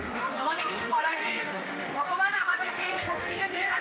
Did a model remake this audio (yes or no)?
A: yes